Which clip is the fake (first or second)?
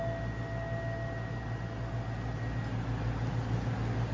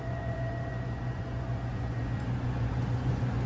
second